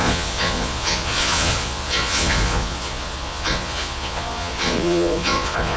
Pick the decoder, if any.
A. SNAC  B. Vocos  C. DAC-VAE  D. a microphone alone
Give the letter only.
B